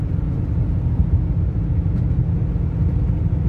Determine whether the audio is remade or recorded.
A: recorded